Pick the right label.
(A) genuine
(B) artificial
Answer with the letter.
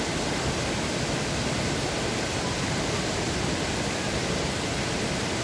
A